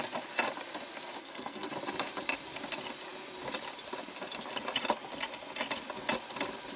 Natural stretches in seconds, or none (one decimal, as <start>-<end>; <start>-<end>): 0.0-1.2; 1.7-6.8